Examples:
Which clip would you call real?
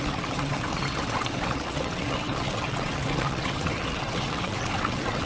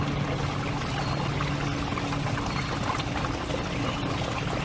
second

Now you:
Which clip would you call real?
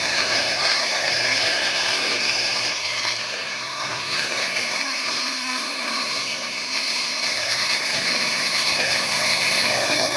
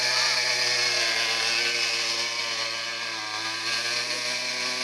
second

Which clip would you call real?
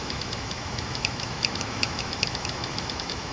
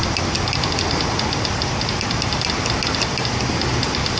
second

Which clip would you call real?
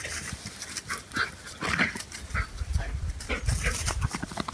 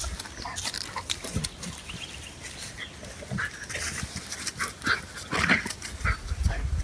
second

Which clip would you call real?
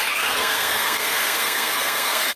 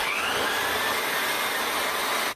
second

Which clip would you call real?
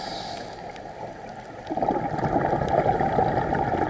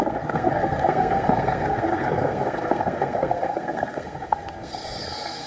first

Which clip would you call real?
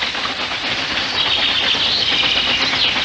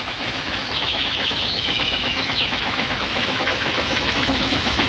first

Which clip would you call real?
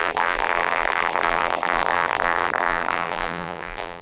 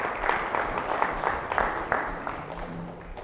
second